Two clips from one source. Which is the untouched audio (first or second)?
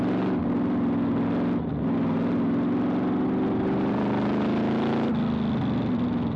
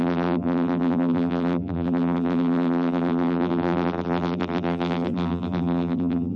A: first